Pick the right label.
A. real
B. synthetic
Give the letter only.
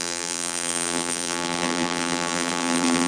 B